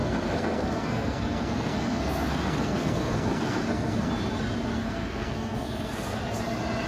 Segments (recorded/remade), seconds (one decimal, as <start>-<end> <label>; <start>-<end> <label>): 0.0-4.1 remade; 4.1-4.7 recorded; 4.7-6.4 remade; 6.4-6.9 recorded